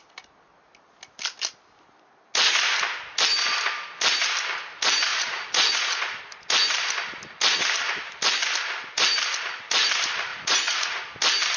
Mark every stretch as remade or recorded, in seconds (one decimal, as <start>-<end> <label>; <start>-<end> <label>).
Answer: 0.0-5.1 recorded; 5.1-6.2 remade; 6.2-10.3 recorded; 10.3-11.0 remade; 11.0-11.6 recorded